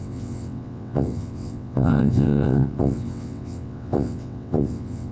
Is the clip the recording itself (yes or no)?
no